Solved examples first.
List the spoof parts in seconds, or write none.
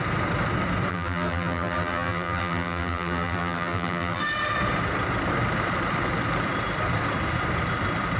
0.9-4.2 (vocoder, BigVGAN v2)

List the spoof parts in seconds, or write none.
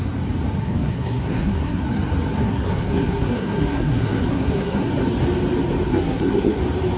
0.6-1.8 (codec, SNAC); 2.4-4.9; 5.9-6.6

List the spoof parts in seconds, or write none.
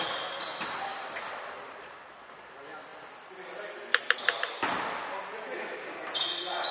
0.9-1.5 (vocoder, BigVGAN v2)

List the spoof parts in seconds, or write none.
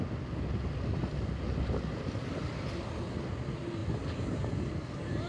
3.8-5.3 (vocoder, BigVGAN v2)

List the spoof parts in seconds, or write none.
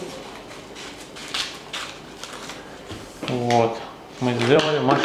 0.0-1.2 (vocoder, BigVGAN v2); 4.2-5.0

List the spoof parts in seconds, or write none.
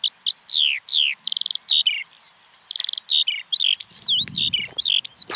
none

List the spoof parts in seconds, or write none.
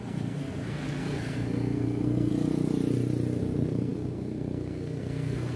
0.0-2.3 (codec, SNAC); 3.4-5.6